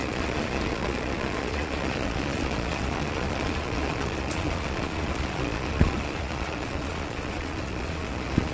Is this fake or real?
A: fake